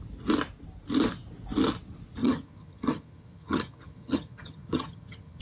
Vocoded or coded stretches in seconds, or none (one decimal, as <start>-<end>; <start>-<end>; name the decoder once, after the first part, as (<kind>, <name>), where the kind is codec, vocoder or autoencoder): 2.2-5.4 (vocoder, HiFi-GAN)

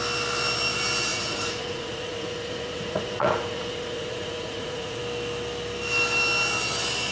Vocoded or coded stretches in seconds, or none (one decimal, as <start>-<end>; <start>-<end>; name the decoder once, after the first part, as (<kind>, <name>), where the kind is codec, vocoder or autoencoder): 1.1-5.0 (vocoder, Vocos)

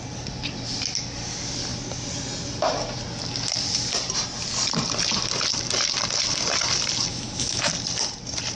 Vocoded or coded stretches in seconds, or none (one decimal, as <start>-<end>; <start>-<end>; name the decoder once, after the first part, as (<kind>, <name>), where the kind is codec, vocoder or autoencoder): 7.1-7.7 (autoencoder, DAC-VAE)

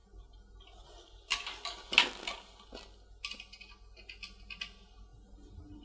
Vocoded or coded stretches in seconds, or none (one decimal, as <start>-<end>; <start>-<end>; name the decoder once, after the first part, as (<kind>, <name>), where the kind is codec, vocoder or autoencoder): none

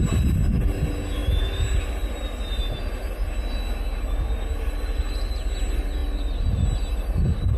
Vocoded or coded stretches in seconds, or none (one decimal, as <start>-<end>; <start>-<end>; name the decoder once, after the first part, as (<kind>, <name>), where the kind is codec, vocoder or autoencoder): none

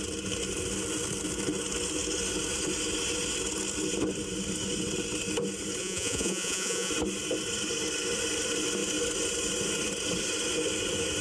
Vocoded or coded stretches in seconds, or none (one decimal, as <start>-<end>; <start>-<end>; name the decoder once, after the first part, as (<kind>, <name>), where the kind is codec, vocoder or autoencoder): 5.8-6.9 (vocoder, Vocos)

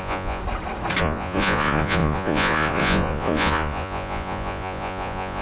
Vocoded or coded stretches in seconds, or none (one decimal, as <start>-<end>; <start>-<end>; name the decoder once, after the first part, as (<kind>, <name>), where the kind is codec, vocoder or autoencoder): 0.0-0.4 (vocoder, Vocos); 1.0-5.4

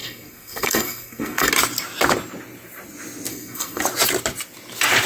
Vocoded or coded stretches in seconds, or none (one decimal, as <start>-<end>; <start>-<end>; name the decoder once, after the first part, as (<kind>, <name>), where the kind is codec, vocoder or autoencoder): 0.0-1.5 (codec, SNAC); 3.3-3.8